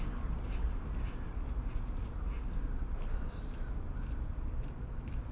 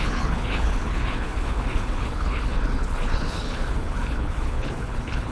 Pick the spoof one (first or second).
second